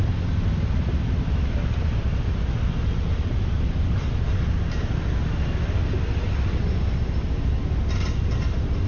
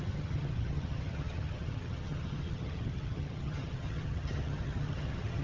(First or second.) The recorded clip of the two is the first